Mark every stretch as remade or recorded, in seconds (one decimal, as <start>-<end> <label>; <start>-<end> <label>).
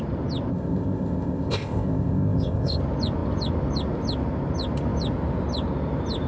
0.0-0.5 recorded; 0.5-2.8 remade; 2.8-6.3 recorded